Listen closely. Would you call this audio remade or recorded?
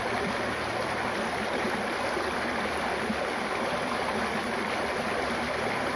recorded